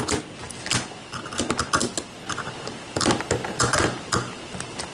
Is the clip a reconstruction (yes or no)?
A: no